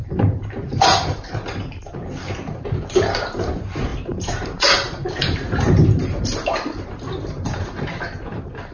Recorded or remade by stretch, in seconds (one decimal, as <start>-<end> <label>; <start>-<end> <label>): 0.0-3.5 remade; 3.5-3.9 recorded; 3.9-8.0 remade; 8.0-8.7 recorded